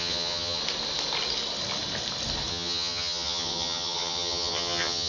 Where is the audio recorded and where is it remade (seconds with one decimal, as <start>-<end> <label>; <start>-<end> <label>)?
0.0-0.6 remade; 0.6-2.5 recorded; 2.5-5.1 remade